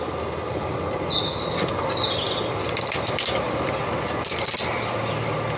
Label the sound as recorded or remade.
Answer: recorded